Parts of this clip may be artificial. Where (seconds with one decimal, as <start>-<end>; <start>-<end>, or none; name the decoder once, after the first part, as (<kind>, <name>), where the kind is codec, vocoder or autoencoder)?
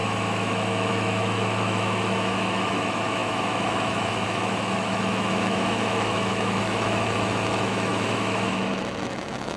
0.0-9.6 (autoencoder, DAC-VAE)